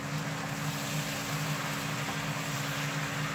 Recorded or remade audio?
recorded